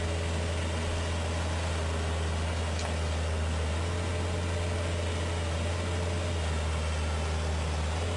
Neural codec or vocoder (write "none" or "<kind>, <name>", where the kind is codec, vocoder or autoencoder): none